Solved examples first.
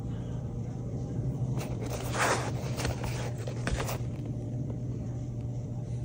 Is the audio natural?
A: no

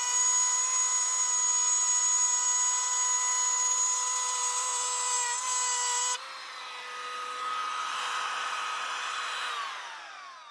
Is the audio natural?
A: no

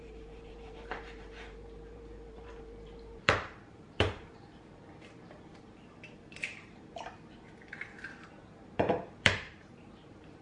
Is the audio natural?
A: no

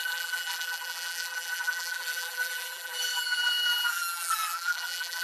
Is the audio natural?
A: no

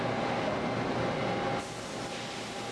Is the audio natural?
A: yes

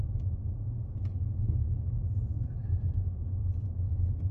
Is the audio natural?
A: yes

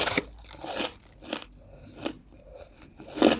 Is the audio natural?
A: yes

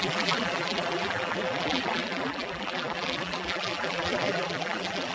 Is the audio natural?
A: no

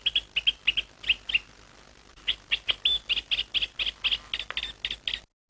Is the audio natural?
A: yes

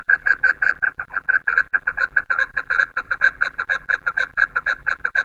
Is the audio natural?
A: no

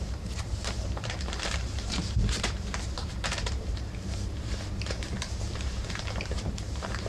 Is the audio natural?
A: no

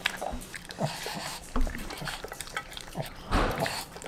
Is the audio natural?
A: no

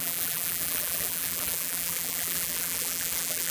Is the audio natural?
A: no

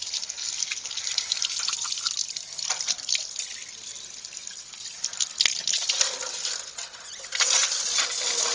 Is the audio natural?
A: no